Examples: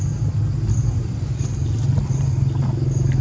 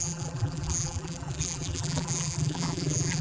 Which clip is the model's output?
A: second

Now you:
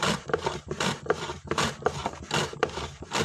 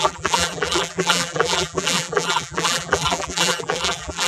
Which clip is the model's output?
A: second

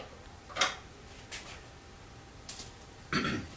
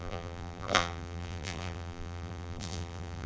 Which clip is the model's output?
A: second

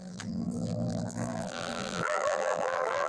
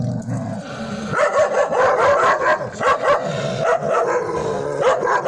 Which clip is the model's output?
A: first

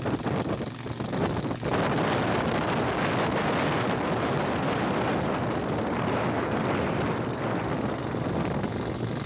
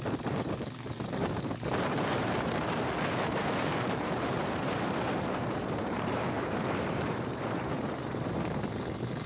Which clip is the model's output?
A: second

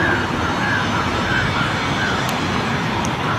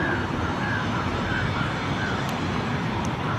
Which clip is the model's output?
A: second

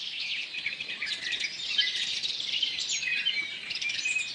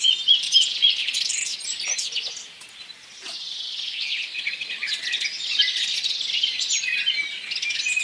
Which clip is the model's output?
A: first